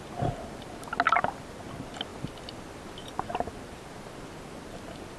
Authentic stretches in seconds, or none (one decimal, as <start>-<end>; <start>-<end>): 0.0-5.2